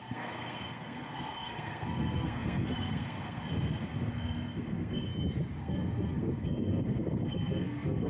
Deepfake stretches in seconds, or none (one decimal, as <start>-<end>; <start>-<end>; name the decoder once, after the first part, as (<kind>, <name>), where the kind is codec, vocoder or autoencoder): 0.0-5.1 (codec, SNAC); 5.6-8.1